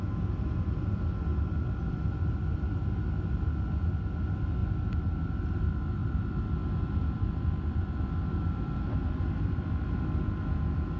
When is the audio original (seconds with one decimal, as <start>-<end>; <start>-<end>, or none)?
0.0-6.0; 9.4-11.0